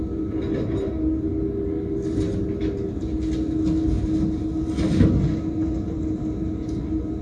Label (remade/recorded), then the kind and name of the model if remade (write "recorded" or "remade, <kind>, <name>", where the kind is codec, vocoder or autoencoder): recorded